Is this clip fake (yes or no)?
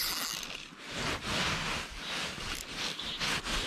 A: no